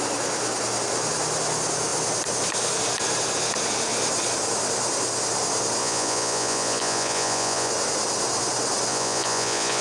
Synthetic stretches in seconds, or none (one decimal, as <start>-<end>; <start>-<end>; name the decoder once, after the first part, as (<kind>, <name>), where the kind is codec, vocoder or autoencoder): 5.8-7.7 (vocoder, Vocos); 8.9-9.8